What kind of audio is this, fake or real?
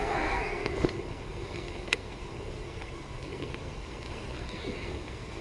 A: fake